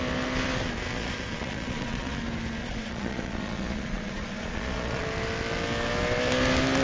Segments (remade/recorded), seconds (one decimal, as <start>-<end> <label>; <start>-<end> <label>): 0.0-0.9 recorded; 0.9-2.2 remade; 2.2-2.6 recorded; 2.6-5.0 remade; 5.0-6.8 recorded